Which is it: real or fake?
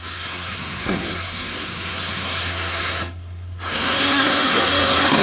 fake